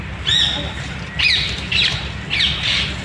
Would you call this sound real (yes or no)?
yes